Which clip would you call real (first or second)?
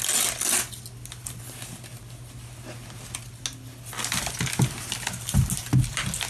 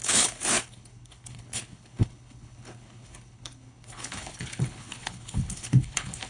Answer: first